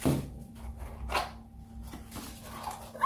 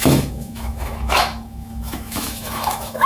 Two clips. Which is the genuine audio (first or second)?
first